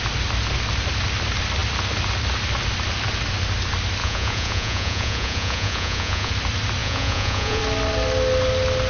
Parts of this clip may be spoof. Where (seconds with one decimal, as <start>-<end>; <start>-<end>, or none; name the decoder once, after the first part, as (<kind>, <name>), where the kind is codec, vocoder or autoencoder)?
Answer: 4.0-6.3 (vocoder, Vocos); 6.8-7.6